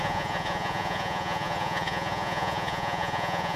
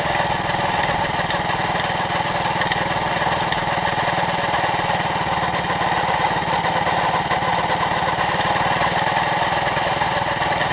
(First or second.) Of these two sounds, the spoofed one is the first